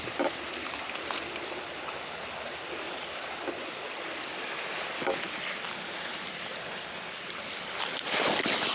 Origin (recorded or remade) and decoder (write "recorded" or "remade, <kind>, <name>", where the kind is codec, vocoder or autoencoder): recorded